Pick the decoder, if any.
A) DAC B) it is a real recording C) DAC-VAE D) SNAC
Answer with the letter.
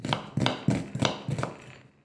B